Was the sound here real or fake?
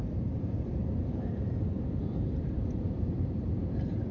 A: fake